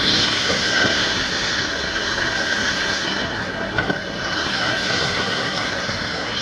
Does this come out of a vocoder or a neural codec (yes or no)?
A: yes